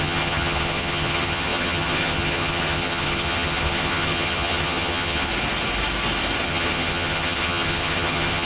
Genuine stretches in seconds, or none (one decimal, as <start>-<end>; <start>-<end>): 5.3-6.4